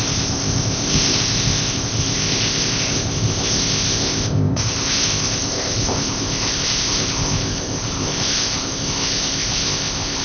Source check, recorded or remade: remade